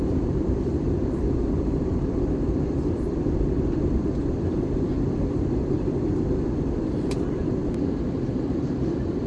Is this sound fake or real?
fake